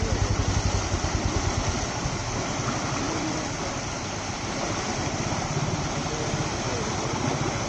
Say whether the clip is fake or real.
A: real